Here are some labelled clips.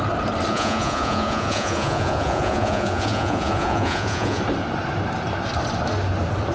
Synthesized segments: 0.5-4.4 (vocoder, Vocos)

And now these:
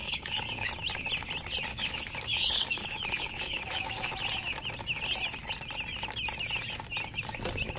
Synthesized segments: 0.0-0.7 (codec, DAC); 1.7-4.1

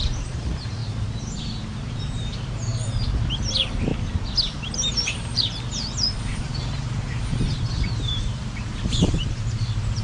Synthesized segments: 0.0-2.7 (vocoder, BigVGAN v2); 3.5-3.9; 4.9-10.0

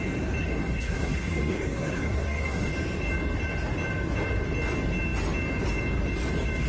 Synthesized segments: 0.4-2.7 (codec, SNAC)

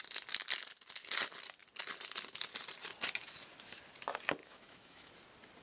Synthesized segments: 4.4-5.1 (autoencoder, DAC-VAE)